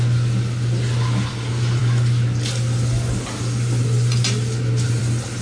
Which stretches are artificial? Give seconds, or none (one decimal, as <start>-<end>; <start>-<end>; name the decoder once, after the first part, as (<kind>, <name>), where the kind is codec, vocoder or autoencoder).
none